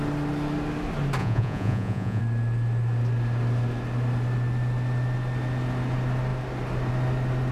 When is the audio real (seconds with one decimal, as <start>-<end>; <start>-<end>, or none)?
0.0-1.2; 2.2-7.5